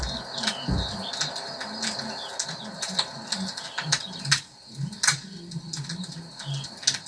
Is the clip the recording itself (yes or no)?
yes